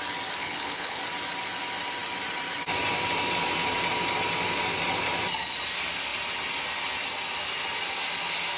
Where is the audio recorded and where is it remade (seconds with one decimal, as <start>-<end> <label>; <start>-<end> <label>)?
0.0-0.4 recorded; 0.4-1.0 remade; 1.0-8.6 recorded